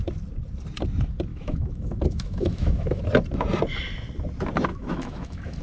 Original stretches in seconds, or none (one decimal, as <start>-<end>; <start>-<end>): 0.0-1.3; 3.0-4.7